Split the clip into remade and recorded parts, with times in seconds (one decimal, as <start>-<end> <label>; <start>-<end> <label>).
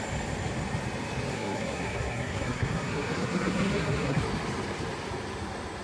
0.0-1.3 recorded; 1.3-4.2 remade; 4.2-5.8 recorded